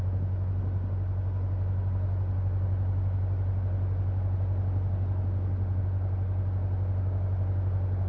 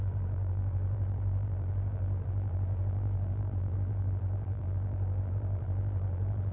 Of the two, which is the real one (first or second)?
first